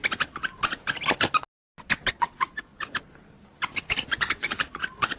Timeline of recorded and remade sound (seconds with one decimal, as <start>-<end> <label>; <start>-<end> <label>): 0.0-2.1 recorded; 2.1-2.7 remade; 2.7-4.2 recorded; 4.2-5.2 remade